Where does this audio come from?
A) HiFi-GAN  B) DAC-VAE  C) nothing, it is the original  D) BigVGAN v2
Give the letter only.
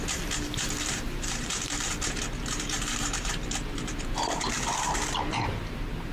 D